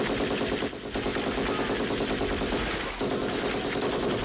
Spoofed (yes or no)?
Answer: no